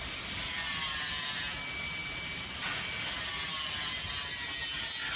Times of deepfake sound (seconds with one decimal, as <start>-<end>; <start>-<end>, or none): none